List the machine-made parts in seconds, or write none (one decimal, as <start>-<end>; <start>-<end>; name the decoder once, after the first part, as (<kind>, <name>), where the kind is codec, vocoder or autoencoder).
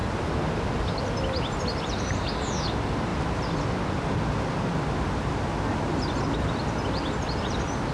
none